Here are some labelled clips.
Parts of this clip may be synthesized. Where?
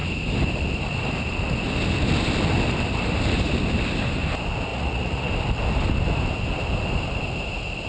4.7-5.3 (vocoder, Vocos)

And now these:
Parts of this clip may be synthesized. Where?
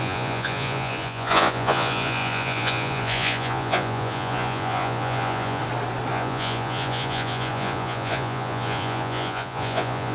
0.0-5.6 (vocoder, Vocos); 6.1-10.1